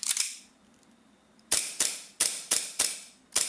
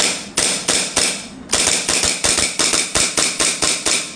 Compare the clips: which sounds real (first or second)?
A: second